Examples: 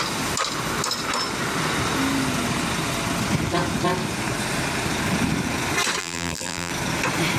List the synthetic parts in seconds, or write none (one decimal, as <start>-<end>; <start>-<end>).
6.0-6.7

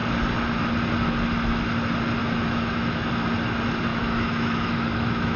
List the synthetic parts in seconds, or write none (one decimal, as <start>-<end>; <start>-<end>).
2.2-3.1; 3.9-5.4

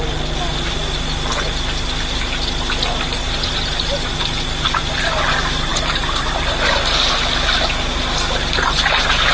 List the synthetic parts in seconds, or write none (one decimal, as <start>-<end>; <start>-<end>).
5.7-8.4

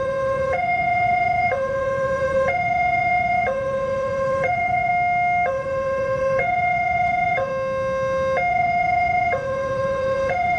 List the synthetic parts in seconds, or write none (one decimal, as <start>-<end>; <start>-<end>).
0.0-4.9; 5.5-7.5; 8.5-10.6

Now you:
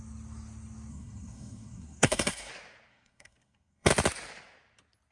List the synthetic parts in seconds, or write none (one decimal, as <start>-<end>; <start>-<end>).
0.9-2.5; 2.9-3.9

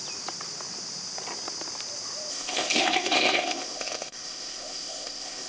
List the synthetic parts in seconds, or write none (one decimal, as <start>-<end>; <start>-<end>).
2.3-5.5

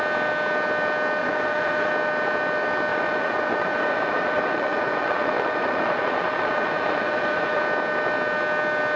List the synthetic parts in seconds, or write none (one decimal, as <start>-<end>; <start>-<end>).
1.2-1.9; 2.9-7.6

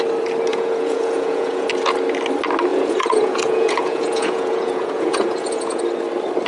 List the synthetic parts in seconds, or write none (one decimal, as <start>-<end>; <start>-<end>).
0.5-1.7; 2.7-5.8